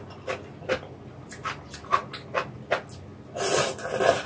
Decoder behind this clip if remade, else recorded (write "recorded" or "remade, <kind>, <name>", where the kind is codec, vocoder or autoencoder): recorded